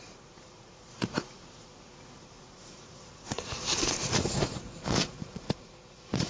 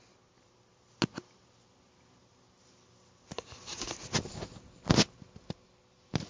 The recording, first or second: second